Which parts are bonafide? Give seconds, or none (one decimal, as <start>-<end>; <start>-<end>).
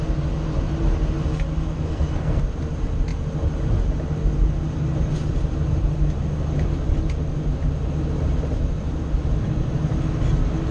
0.0-1.7; 2.4-10.7